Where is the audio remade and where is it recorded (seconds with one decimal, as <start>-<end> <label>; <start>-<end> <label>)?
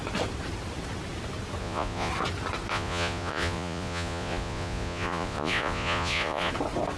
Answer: 0.0-1.6 recorded; 1.6-2.1 remade; 2.1-2.7 recorded; 2.7-6.5 remade; 6.5-7.0 recorded